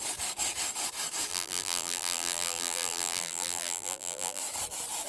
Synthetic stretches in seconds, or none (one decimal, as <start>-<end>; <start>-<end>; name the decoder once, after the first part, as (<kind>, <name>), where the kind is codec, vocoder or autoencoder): 1.3-4.4 (vocoder, BigVGAN v2)

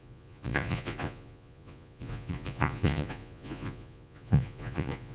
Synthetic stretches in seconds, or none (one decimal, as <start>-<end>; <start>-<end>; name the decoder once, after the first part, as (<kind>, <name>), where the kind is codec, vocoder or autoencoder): 0.0-5.1 (vocoder, Vocos)